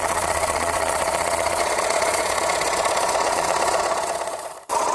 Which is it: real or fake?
fake